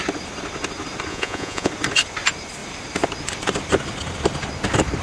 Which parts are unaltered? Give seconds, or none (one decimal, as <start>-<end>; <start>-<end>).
0.0-1.1; 1.7-5.0